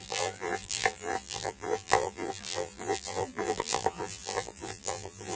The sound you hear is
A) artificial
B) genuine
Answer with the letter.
A